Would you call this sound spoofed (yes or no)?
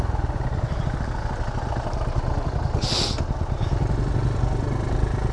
no